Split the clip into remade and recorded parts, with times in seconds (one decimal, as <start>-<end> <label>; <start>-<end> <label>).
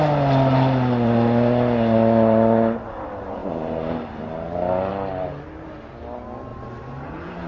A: 0.0-3.4 recorded; 3.4-4.1 remade; 4.1-6.5 recorded; 6.5-7.5 remade